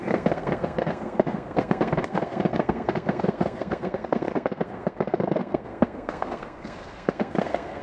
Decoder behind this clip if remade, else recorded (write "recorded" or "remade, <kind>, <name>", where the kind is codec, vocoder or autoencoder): remade, codec, SNAC